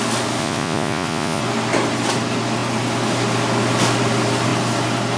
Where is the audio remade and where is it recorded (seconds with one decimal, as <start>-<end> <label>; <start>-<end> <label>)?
0.0-0.4 recorded; 0.4-1.4 remade; 1.4-5.2 recorded